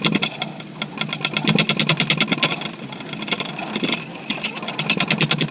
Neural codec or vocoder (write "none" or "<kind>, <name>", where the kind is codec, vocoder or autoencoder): none